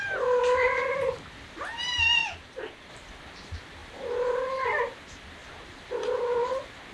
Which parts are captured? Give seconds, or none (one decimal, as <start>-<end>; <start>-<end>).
0.0-2.2; 2.9-6.9